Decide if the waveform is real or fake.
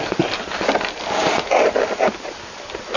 real